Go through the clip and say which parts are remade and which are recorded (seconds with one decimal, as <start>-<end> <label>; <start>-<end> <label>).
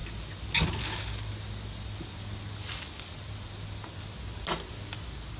0.0-5.4 recorded